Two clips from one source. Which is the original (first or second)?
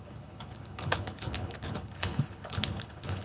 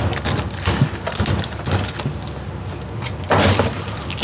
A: second